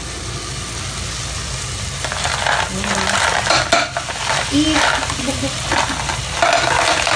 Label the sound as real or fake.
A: real